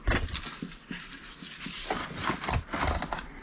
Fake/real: real